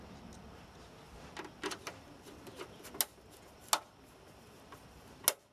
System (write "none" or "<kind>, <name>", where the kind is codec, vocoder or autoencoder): none